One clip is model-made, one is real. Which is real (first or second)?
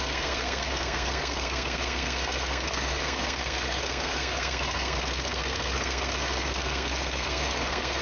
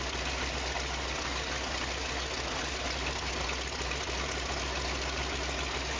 second